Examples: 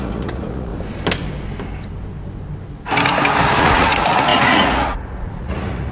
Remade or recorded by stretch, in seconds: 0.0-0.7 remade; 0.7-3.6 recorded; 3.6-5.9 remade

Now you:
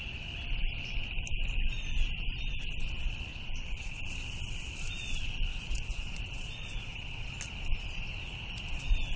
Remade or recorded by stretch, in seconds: 0.0-3.3 recorded; 3.3-4.0 remade; 4.0-5.5 recorded; 5.5-7.3 remade; 7.3-9.2 recorded

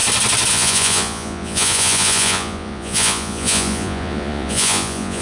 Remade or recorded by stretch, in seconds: 0.0-0.5 recorded; 0.5-5.2 remade